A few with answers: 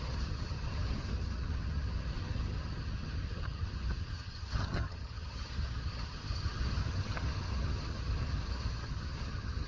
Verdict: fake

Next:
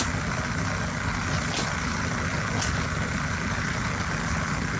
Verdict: real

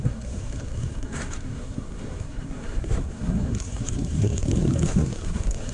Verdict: fake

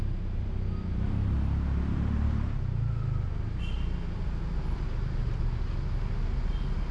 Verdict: real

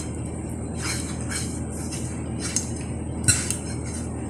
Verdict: real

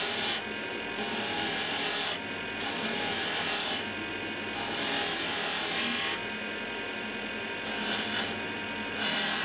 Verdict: real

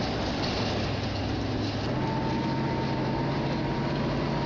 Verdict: real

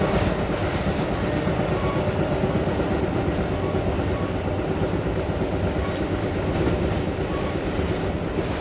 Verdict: real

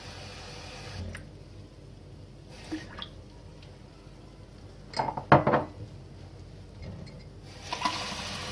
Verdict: real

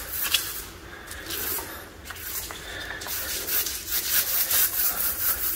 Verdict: real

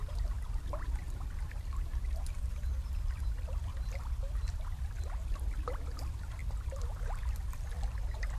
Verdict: fake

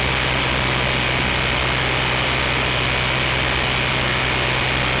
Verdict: real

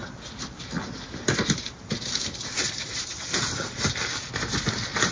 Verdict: real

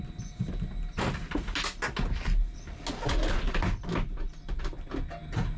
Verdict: real